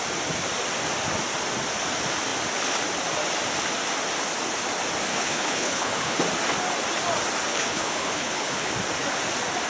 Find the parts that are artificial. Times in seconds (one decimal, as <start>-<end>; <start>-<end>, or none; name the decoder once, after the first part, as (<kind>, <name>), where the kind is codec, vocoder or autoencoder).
5.1-6.2 (codec, HILCodec); 7.5-8.7